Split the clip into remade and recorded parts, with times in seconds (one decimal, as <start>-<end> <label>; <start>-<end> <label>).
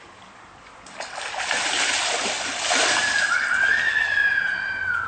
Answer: 0.0-4.2 recorded; 4.2-5.1 remade